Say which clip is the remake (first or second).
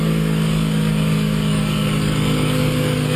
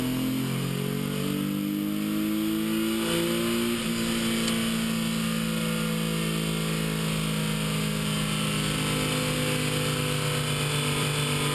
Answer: first